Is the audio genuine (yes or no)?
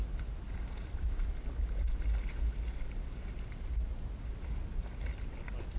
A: yes